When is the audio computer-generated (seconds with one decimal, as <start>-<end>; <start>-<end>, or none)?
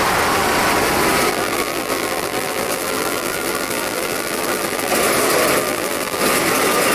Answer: 1.3-4.9; 5.6-6.2